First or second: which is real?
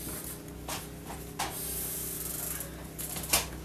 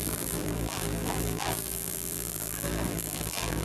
first